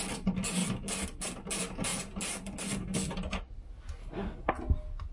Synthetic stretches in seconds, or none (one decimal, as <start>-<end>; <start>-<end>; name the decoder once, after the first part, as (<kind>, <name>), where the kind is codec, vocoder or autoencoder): 4.0-4.5 (codec, SNAC)